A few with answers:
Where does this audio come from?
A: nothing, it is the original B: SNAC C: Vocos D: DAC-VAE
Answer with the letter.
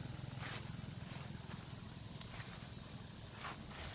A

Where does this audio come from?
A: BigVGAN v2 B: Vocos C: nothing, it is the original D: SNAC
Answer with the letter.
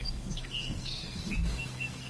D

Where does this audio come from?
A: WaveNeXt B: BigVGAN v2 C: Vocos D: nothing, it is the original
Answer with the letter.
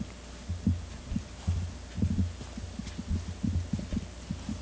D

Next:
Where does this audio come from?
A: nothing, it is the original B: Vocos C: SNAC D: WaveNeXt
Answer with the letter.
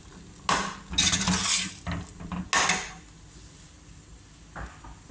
A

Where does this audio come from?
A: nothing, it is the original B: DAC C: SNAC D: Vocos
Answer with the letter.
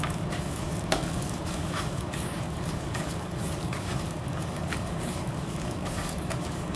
B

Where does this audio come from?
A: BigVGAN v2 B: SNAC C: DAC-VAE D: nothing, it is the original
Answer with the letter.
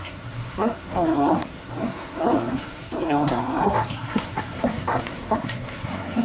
B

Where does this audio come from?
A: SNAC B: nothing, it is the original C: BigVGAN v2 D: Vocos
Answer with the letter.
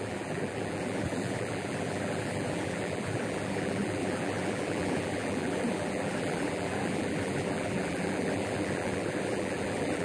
C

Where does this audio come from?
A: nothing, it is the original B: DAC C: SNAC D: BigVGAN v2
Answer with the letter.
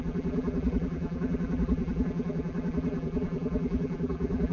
D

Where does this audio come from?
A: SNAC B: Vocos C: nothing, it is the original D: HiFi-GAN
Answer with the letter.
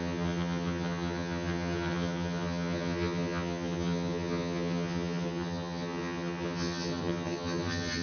D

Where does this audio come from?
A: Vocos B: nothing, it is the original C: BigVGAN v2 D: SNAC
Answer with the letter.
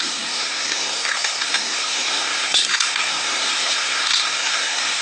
D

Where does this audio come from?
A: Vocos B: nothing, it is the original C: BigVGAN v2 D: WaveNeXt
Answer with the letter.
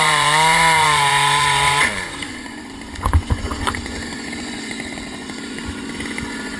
A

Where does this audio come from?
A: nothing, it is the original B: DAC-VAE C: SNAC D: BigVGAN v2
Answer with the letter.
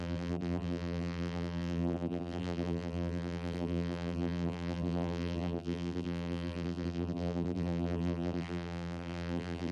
D